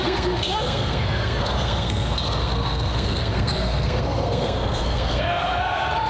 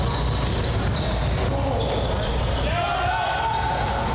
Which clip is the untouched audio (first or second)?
second